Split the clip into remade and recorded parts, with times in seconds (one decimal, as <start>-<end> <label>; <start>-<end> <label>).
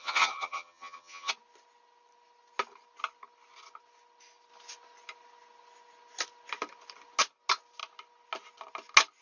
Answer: 0.0-1.3 remade; 1.3-9.2 recorded